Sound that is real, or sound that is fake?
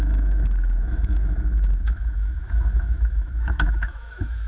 fake